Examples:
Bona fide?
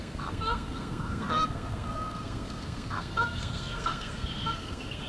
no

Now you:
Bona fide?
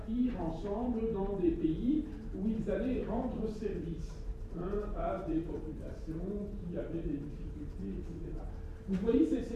no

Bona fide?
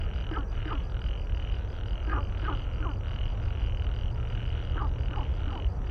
yes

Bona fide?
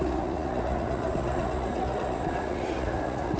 no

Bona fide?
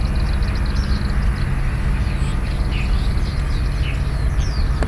yes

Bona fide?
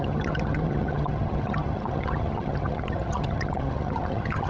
no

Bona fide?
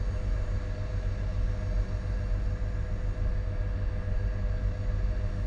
yes